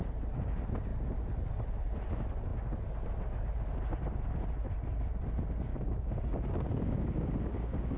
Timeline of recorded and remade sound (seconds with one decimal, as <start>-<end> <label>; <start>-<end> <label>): 0.0-5.7 recorded; 5.7-8.0 remade